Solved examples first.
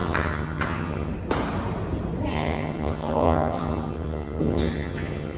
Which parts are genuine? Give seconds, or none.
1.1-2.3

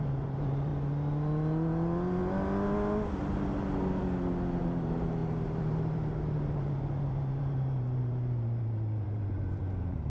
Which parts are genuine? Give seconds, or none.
0.7-4.6

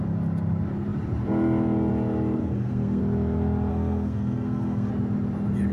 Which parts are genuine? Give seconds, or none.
0.0-2.4; 3.0-3.7; 4.9-5.7

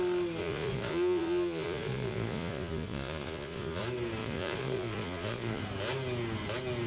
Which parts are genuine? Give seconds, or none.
0.0-0.4; 3.8-4.2; 5.6-6.9